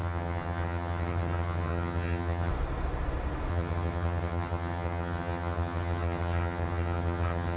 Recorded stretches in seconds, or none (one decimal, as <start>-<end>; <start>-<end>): 2.5-3.5